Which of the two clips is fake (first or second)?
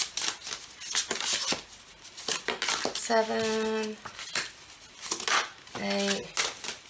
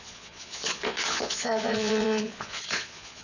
second